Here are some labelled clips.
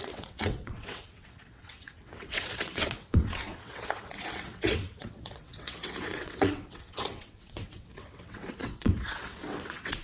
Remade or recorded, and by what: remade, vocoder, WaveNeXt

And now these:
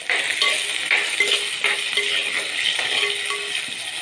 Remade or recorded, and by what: recorded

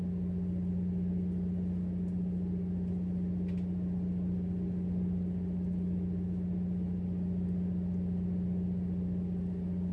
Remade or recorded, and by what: recorded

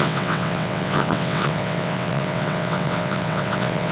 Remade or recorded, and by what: remade, vocoder, WaveNeXt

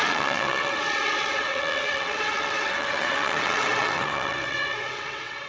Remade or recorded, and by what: remade, vocoder, WaveNeXt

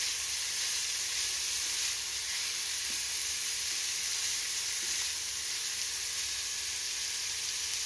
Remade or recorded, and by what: recorded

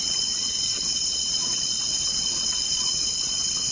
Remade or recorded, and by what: remade, vocoder, WaveNeXt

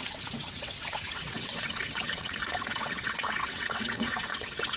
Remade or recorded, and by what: remade, vocoder, WaveNeXt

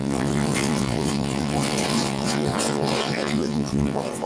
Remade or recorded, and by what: remade, vocoder, WaveNeXt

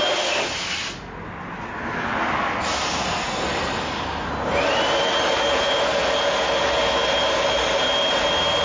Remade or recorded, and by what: recorded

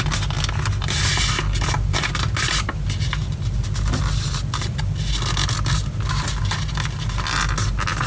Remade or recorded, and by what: recorded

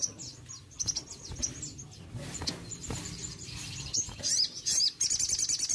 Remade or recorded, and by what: recorded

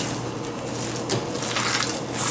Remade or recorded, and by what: recorded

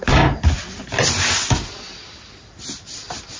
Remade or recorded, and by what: recorded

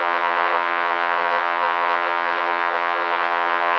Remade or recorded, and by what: remade, vocoder, WaveNeXt